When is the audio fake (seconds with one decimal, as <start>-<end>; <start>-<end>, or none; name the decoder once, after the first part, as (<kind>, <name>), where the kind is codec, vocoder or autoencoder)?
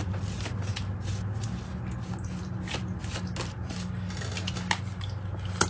none